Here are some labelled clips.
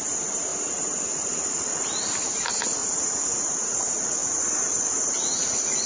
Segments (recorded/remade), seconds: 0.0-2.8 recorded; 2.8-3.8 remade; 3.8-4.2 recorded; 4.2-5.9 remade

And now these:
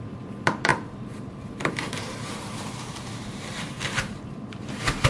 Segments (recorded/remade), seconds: 0.0-5.1 remade

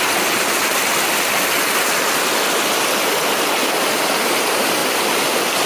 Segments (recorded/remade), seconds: 0.0-0.8 remade; 0.8-4.2 recorded; 4.2-4.8 remade; 4.8-5.7 recorded